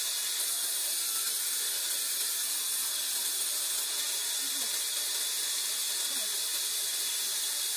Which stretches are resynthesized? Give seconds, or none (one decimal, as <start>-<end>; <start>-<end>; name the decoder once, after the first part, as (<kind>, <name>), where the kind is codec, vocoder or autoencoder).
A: none